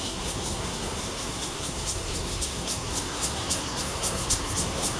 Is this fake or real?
fake